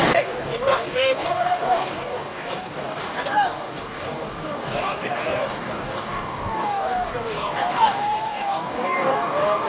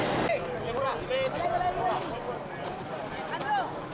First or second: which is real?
second